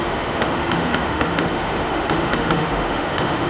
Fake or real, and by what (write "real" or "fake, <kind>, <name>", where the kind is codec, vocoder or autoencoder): fake, autoencoder, DAC-VAE